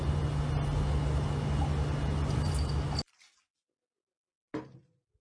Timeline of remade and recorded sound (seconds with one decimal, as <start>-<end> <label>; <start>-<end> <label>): 0.0-5.2 recorded